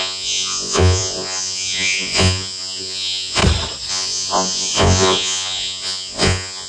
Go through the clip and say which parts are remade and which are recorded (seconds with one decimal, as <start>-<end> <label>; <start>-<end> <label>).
0.0-3.4 remade; 3.4-3.9 recorded; 3.9-6.7 remade